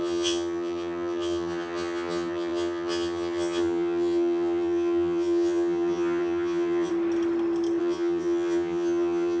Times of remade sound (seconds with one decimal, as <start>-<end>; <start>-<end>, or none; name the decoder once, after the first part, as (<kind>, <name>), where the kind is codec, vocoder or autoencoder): 0.0-6.9 (vocoder, HiFi-GAN); 7.8-9.4